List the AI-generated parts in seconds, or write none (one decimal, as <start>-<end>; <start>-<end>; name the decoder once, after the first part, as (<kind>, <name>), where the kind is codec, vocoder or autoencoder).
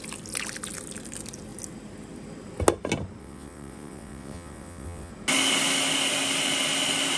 3.2-5.1 (vocoder, WaveNeXt)